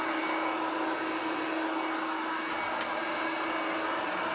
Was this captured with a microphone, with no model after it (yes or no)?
yes